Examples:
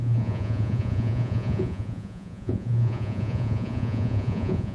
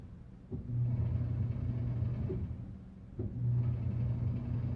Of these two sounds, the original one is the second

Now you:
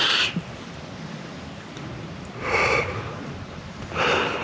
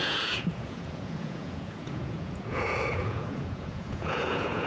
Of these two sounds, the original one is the first